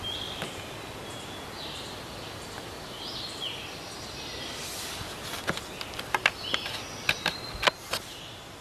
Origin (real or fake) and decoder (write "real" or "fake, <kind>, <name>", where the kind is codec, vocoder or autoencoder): real